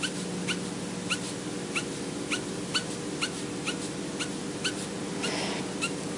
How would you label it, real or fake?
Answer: real